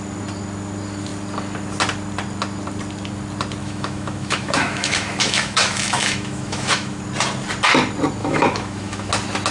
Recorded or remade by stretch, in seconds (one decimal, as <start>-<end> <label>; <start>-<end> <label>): 0.0-3.6 recorded; 3.6-7.0 remade; 7.0-8.2 recorded; 8.2-9.1 remade; 9.1-9.5 recorded